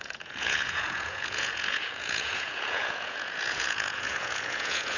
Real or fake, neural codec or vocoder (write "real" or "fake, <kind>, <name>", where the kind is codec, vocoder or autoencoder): fake, vocoder, Vocos